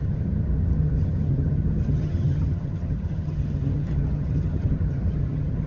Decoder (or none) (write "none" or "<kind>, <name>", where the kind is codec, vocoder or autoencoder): vocoder, HiFi-GAN